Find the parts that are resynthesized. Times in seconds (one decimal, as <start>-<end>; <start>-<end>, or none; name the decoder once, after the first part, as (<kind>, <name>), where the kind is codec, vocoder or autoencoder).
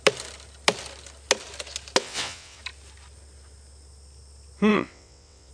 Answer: 2.0-2.6 (vocoder, WaveNeXt); 4.7-5.5